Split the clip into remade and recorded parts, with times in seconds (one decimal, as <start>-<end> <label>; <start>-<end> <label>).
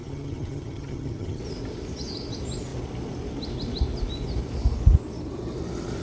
0.0-1.4 remade; 1.4-6.0 recorded